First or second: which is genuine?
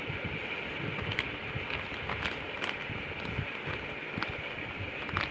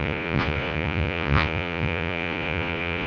first